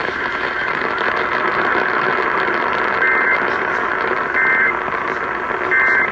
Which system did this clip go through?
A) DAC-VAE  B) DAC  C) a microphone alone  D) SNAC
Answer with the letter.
C